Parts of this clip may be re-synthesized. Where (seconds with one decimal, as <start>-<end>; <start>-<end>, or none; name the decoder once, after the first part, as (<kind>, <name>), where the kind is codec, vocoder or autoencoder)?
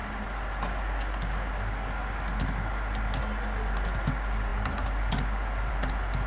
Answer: none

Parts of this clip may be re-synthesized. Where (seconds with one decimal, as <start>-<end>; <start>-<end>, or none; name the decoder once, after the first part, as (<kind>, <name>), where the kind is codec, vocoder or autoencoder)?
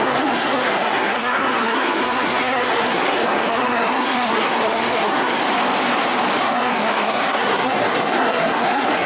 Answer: 0.0-5.4 (codec, SNAC); 6.4-9.1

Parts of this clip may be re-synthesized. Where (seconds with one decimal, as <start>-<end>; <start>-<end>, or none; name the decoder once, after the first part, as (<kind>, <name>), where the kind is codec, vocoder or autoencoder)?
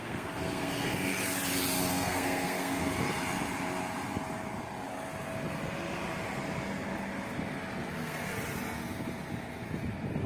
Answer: 0.0-0.9 (codec, SNAC); 1.9-2.8; 7.9-8.3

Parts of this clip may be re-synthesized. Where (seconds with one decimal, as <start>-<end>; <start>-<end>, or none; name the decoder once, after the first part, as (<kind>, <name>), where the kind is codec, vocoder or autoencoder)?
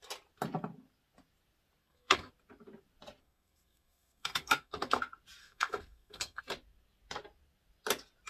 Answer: 1.8-2.3 (codec, SNAC); 3.2-5.0; 5.4-6.4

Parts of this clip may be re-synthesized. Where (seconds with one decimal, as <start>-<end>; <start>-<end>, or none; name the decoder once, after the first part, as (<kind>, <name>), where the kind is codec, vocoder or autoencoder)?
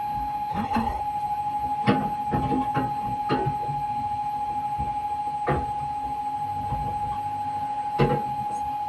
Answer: 0.5-1.0 (codec, SNAC)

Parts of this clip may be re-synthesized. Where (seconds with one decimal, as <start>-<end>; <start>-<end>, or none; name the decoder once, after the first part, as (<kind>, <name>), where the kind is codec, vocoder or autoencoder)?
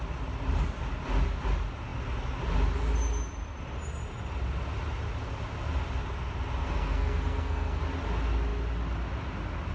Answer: 6.6-7.8 (codec, SNAC)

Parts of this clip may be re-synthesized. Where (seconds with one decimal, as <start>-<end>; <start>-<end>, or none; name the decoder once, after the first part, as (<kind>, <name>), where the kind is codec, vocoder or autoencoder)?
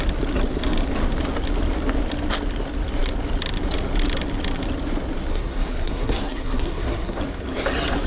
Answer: 5.3-7.2 (codec, SNAC)